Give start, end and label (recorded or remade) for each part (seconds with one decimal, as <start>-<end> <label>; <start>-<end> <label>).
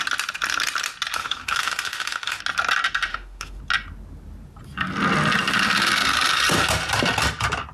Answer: 0.0-1.2 recorded; 1.2-2.4 remade; 2.4-3.1 recorded; 3.1-3.6 remade; 3.6-7.7 recorded